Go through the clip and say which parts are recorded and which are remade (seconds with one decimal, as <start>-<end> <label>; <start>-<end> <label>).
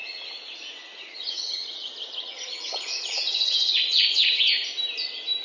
0.0-4.7 remade; 4.7-5.4 recorded